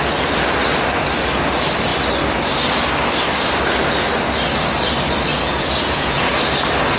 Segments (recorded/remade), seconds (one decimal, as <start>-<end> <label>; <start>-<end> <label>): 0.0-5.3 recorded; 5.3-6.2 remade; 6.2-7.0 recorded